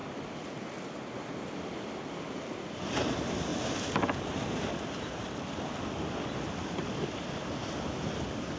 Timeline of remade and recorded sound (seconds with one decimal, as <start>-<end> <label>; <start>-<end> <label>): 0.0-8.6 recorded